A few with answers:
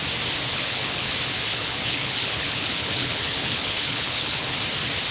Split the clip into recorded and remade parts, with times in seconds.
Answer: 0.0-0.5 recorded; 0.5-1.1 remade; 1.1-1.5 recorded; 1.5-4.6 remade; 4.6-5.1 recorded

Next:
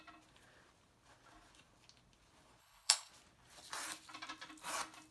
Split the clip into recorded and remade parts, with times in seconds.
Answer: 0.0-2.6 recorded; 2.6-3.1 remade; 3.1-5.1 recorded

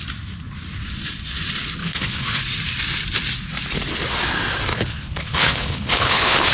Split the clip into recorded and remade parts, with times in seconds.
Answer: 0.0-1.8 recorded; 1.8-2.4 remade; 2.4-4.7 recorded; 4.7-6.5 remade

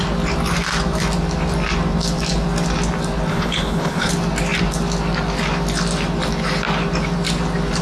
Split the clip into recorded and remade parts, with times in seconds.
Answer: 0.0-3.3 recorded; 3.3-4.1 remade; 4.1-7.8 recorded

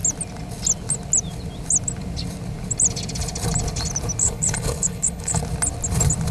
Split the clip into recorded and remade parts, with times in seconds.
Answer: 0.0-4.2 recorded; 4.2-5.4 remade; 5.4-6.3 recorded

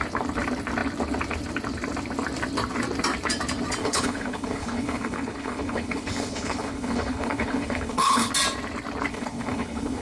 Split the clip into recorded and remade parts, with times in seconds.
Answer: 0.0-3.8 recorded; 3.8-8.3 remade; 8.3-9.1 recorded; 9.1-10.0 remade

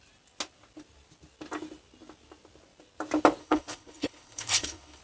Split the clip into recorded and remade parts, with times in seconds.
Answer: 0.0-3.4 recorded; 3.4-5.0 remade